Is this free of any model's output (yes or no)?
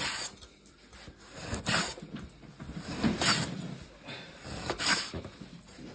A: yes